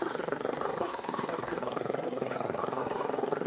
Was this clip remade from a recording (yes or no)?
yes